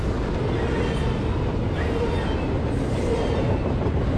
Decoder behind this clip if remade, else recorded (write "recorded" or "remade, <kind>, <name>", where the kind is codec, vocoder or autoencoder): recorded